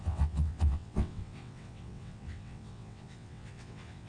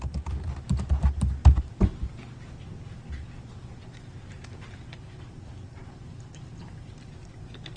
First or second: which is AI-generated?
first